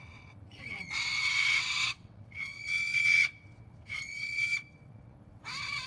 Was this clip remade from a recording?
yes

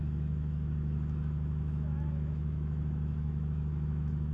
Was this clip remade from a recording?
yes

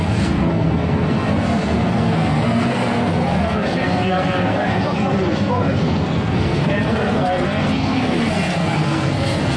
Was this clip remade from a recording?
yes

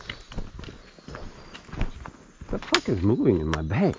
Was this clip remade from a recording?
no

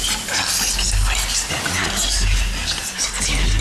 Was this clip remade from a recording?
no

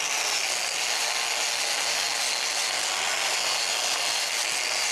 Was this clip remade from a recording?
no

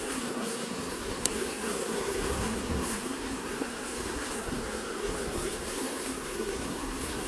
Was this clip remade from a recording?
yes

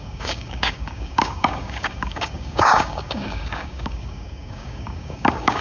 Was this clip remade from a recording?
yes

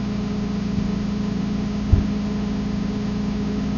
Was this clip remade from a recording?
yes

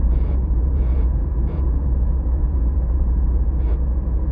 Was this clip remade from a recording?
yes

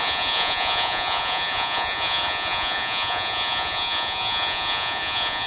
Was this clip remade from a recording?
yes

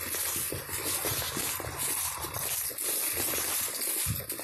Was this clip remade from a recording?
no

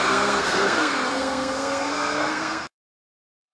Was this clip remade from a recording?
yes